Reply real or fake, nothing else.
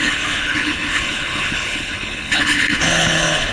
fake